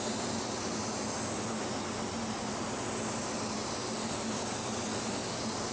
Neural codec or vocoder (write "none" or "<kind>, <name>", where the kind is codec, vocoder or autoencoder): none